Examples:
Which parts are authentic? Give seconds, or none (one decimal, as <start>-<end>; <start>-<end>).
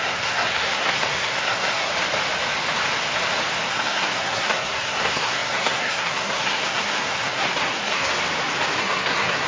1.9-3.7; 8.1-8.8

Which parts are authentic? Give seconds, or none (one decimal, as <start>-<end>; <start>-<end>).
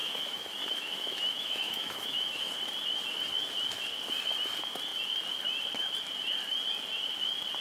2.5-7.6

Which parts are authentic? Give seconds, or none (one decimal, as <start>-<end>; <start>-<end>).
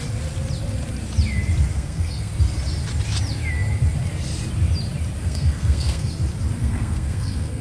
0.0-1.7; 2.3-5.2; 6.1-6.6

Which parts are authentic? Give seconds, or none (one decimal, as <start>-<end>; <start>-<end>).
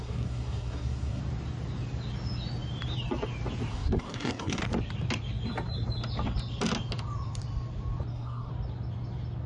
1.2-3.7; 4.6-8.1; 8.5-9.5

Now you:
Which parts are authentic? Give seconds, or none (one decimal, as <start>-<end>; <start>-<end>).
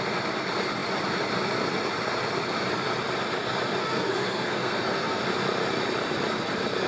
0.0-3.8; 5.2-6.9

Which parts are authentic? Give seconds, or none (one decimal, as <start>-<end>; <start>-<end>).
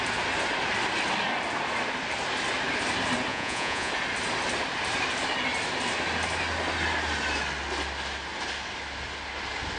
0.0-3.3; 3.9-9.8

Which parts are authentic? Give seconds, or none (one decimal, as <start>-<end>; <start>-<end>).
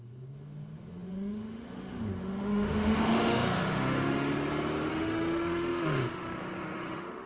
4.3-4.9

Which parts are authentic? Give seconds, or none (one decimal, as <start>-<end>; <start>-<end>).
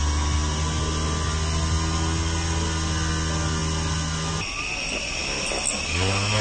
0.0-6.4